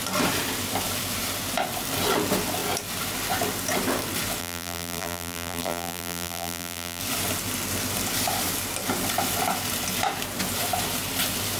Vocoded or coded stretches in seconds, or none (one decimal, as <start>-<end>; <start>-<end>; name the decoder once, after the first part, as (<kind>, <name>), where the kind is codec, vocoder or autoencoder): 4.4-7.0 (vocoder, BigVGAN v2)